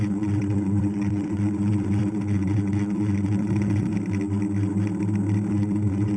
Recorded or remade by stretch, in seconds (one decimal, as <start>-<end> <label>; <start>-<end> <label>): 0.0-3.9 remade; 3.9-5.5 recorded; 5.5-6.2 remade